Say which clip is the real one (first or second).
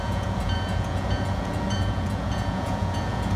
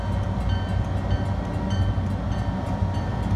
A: second